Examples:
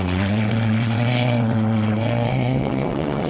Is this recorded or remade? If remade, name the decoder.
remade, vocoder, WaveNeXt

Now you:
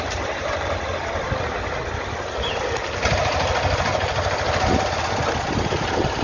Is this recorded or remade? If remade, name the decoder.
recorded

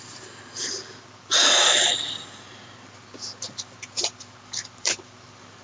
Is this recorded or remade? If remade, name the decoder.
recorded